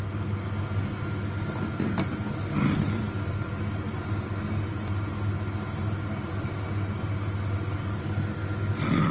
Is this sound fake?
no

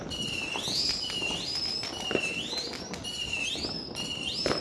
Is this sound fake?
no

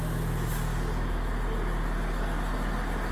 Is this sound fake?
no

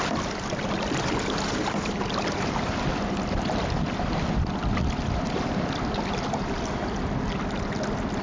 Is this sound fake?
no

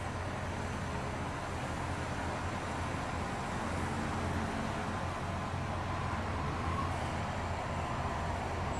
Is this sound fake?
no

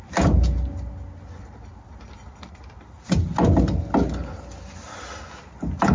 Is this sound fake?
no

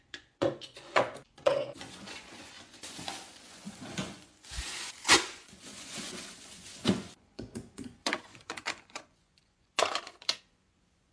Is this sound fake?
yes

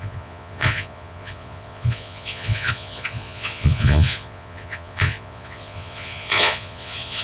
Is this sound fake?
yes